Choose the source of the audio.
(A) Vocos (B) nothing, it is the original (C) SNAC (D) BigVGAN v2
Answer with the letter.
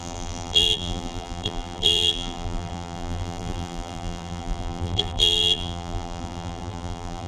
D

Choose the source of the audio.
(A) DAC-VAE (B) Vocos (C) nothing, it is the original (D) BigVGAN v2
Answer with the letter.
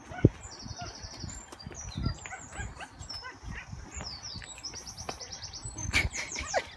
D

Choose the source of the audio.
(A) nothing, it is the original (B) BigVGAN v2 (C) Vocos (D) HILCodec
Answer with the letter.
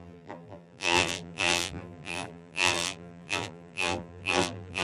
B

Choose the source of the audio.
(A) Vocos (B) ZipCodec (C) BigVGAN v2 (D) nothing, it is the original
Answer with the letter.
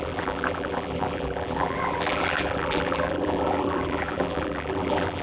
C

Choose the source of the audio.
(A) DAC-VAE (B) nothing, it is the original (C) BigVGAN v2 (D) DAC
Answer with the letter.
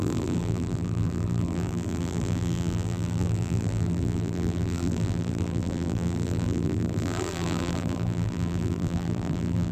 C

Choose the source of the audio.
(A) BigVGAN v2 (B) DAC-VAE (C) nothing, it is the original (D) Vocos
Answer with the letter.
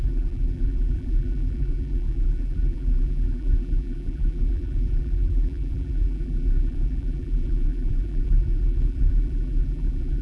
A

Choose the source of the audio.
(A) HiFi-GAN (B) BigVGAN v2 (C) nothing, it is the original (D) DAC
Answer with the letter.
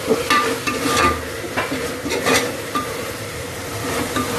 B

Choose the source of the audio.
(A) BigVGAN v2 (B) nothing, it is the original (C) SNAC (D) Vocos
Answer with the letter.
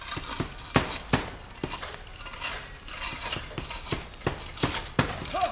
A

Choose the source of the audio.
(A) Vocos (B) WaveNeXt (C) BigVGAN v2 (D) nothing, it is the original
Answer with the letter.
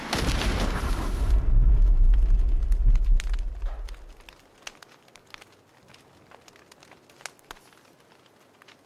D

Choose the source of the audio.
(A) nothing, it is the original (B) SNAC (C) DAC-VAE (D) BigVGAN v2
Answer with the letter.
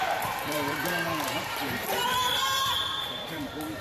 D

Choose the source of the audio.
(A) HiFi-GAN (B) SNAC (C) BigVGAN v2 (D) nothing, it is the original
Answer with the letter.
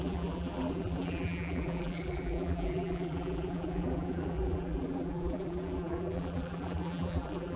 C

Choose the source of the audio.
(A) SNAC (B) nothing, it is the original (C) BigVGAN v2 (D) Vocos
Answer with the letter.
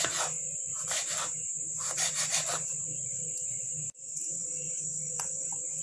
C